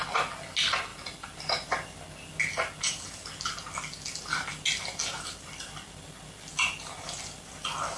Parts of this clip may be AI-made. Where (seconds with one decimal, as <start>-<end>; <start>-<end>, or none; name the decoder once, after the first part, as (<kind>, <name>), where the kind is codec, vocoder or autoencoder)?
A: none